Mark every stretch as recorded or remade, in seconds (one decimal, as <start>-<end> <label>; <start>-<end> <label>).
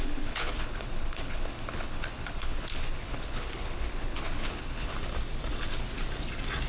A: 0.0-4.9 remade; 4.9-6.7 recorded